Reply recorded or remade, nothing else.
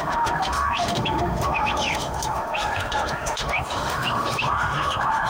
remade